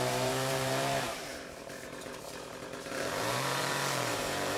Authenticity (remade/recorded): remade